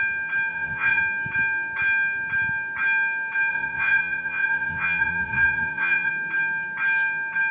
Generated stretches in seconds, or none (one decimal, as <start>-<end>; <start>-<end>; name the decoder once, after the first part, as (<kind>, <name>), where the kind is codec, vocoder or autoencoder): 0.5-1.0 (vocoder, Vocos); 3.5-6.1